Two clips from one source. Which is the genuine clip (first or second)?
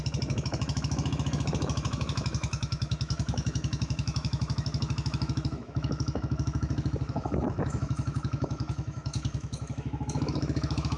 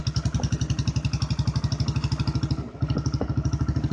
second